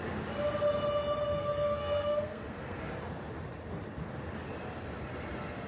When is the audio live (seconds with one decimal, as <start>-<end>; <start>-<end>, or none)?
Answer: 0.0-1.4; 2.8-5.7

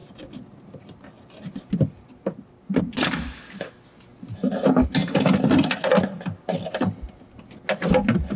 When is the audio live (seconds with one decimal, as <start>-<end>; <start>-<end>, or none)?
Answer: 0.0-8.4

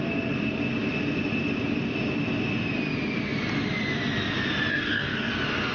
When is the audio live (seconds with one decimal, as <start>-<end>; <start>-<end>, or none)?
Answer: 0.0-4.7; 5.3-5.7

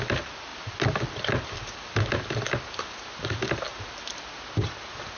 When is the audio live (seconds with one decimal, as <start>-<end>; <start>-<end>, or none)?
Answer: 0.0-5.2

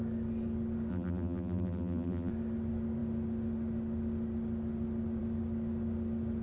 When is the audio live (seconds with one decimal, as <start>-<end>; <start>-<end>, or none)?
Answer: 0.0-0.9; 2.3-6.4

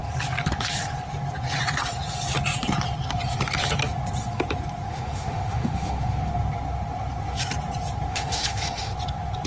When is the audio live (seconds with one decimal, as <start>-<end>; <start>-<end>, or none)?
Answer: 0.0-4.9; 6.3-8.1; 8.9-9.5

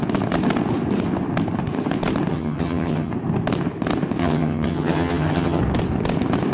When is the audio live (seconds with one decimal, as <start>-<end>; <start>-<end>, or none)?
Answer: 0.0-2.3; 3.1-4.2; 5.6-6.5